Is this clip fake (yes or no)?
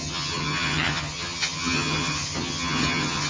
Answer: yes